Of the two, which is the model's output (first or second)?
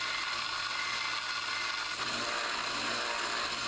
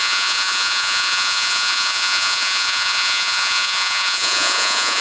second